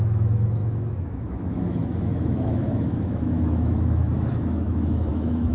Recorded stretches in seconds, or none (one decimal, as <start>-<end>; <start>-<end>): none